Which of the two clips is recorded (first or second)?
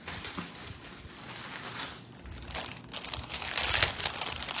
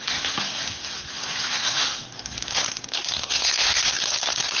first